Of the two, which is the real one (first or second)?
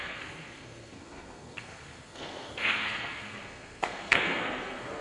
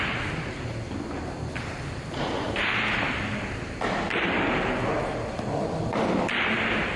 second